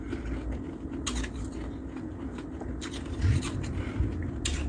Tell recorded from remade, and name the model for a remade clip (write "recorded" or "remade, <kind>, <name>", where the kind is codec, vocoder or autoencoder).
recorded